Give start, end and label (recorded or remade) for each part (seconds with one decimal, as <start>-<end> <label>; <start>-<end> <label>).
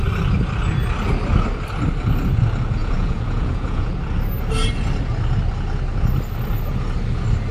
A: 0.0-2.8 recorded; 2.8-3.9 remade; 3.9-7.5 recorded